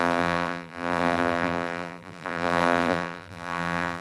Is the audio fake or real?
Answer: fake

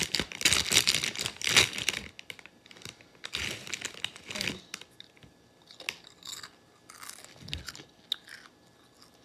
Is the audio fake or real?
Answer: real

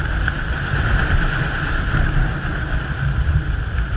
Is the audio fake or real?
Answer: real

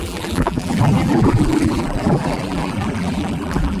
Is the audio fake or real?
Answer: fake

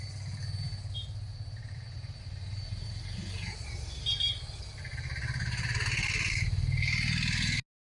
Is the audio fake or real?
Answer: real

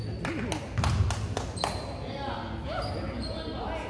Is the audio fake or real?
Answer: real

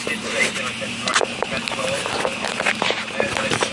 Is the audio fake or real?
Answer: real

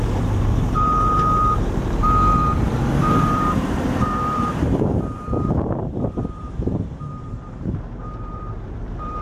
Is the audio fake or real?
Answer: fake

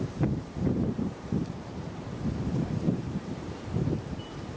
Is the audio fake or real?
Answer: fake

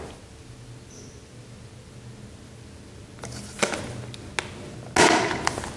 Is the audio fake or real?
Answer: real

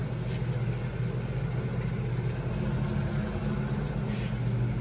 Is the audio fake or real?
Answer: real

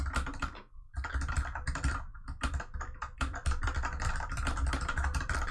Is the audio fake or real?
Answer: fake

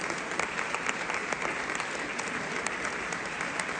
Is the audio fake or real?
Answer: fake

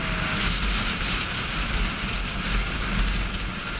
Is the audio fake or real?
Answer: real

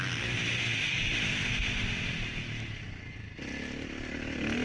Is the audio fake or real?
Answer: real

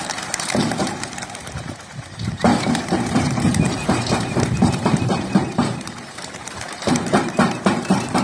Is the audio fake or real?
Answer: fake